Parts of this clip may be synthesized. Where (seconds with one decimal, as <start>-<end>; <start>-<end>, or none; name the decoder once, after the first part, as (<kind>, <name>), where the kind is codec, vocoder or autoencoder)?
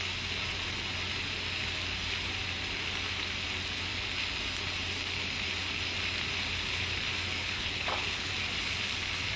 7.4-8.3 (codec, HILCodec)